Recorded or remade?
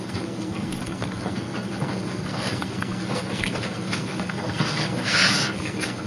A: remade